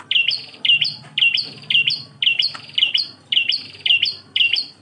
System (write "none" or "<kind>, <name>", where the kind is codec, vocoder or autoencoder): vocoder, BigVGAN v2